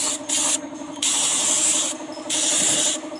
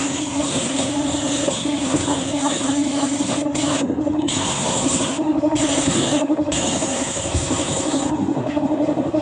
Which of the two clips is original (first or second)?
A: first